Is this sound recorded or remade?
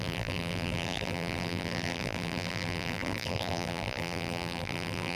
remade